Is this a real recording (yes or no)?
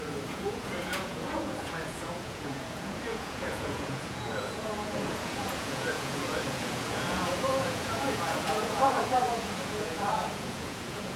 no